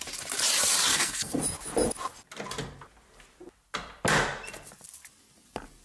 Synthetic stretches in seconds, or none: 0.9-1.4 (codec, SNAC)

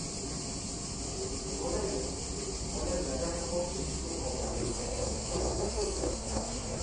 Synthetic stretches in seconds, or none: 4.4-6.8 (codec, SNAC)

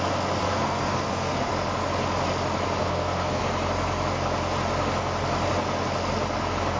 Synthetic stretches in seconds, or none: 0.4-1.5 (codec, SNAC); 2.8-3.4